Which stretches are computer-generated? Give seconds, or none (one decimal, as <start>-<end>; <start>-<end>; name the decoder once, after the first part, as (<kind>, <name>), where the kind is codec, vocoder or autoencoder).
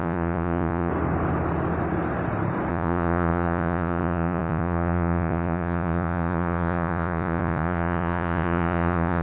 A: 0.0-0.9 (vocoder, Vocos); 2.7-9.2